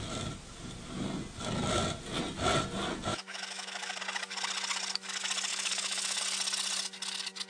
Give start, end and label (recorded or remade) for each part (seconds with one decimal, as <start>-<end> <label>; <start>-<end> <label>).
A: 0.0-3.1 recorded; 3.1-4.0 remade; 4.0-5.5 recorded; 5.5-6.2 remade; 6.2-7.5 recorded